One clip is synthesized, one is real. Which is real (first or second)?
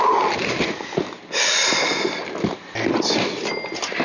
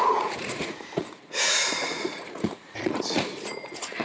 first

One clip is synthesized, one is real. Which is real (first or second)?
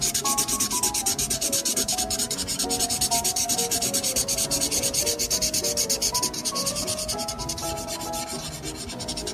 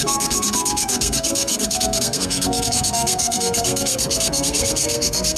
first